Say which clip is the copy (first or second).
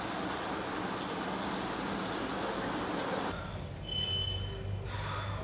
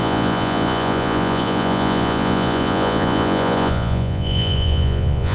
second